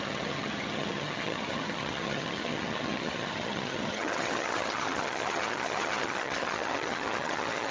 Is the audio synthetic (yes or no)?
yes